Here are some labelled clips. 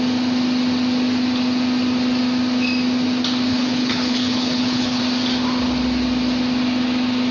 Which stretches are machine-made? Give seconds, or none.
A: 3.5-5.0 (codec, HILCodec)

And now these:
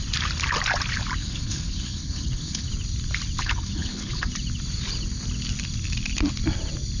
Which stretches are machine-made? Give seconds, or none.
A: 1.2-2.7 (codec, HILCodec); 3.4-4.3

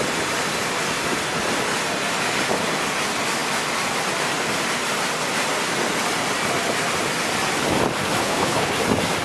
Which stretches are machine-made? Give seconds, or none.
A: 8.2-8.7 (codec, HILCodec)

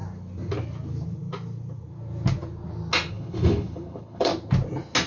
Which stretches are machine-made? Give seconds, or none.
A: 3.1-4.3 (codec, HILCodec)